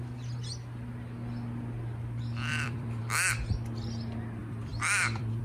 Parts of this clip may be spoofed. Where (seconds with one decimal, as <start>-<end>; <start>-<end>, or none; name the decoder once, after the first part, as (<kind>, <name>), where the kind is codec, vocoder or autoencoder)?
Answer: 2.5-3.0 (vocoder, BigVGAN v2); 4.4-5.4